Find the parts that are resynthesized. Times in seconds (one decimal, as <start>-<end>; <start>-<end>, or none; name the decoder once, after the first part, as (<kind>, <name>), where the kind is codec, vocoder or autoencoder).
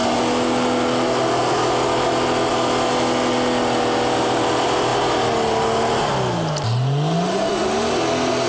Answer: none